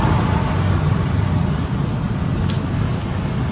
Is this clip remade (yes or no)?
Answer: no